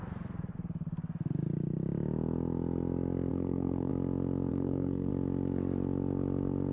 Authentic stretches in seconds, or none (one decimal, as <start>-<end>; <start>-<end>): 0.0-3.3; 3.9-4.5; 5.1-6.7